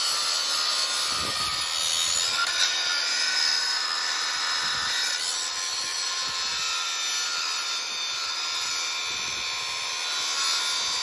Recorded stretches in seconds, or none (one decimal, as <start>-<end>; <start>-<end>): 0.0-11.0